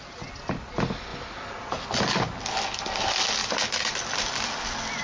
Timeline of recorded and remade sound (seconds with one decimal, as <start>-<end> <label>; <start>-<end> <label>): 0.0-5.0 recorded